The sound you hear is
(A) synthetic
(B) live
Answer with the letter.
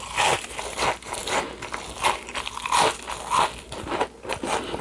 B